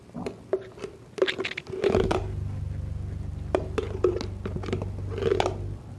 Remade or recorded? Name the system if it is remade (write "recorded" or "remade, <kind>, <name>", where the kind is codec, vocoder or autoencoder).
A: recorded